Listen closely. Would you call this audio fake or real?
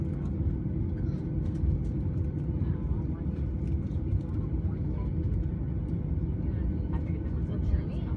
real